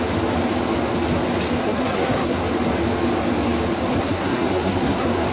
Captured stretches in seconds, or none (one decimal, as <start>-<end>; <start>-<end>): 0.0-1.6; 2.4-3.9